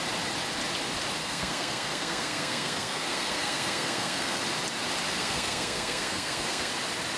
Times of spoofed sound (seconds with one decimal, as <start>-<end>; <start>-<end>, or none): 1.2-4.4; 5.2-6.7